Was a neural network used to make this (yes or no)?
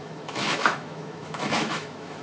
yes